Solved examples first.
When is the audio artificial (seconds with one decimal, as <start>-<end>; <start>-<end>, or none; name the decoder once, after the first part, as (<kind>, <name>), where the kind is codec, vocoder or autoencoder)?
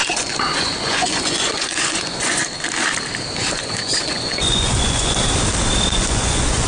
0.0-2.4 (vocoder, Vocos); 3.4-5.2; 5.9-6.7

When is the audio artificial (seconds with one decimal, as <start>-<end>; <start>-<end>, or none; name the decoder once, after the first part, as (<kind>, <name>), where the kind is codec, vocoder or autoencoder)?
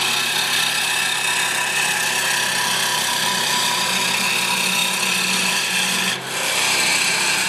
2.9-4.1 (vocoder, BigVGAN v2)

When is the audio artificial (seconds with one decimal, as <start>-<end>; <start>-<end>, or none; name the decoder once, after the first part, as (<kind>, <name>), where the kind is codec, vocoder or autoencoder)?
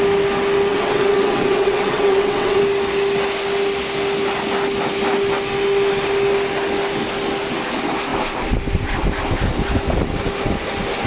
0.7-2.6 (vocoder, WaveNeXt)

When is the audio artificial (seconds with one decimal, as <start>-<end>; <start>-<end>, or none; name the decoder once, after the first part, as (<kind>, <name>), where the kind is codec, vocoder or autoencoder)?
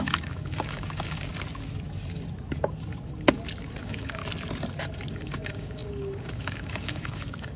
0.0-1.3 (codec, DAC); 3.8-4.2; 5.1-7.6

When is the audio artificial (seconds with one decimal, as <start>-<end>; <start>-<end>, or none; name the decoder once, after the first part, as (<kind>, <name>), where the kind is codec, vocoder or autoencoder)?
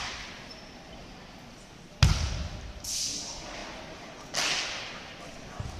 none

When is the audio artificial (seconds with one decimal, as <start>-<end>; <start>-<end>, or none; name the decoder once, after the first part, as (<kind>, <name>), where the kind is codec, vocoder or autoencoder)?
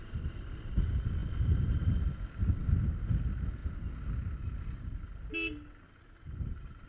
none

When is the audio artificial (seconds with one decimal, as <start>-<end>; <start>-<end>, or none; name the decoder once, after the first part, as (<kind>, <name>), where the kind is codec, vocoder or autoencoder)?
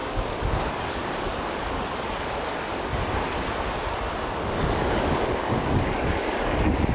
0.0-3.0 (codec, DAC); 4.3-6.9